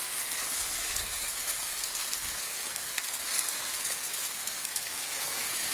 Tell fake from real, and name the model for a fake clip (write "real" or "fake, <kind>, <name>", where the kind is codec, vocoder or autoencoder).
fake, codec, SNAC